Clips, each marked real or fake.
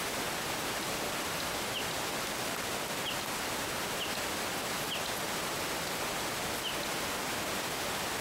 real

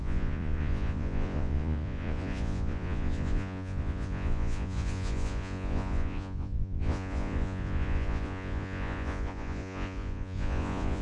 fake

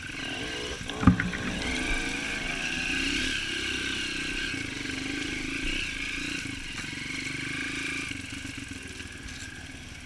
real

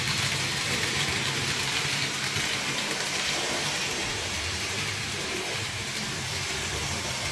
fake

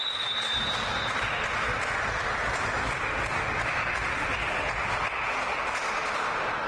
real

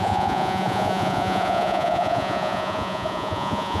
fake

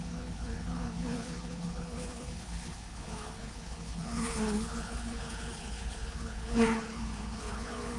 fake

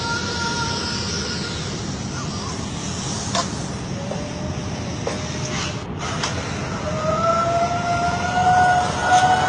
real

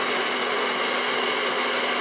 real